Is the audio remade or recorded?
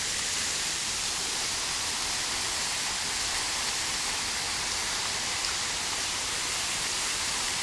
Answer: remade